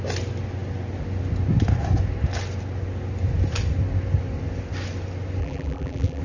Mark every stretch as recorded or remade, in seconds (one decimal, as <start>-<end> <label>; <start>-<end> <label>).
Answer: 0.0-5.4 recorded; 5.4-6.2 remade